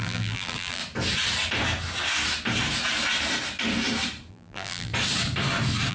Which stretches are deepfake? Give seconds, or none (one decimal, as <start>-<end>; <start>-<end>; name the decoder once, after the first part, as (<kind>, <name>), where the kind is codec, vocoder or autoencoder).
0.0-0.8 (vocoder, BigVGAN v2); 4.3-4.9